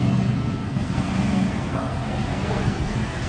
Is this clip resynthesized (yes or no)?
yes